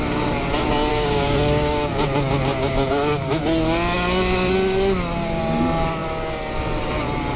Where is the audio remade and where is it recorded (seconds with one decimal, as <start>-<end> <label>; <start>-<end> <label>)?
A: 0.0-0.9 recorded; 0.9-3.4 remade; 3.4-7.4 recorded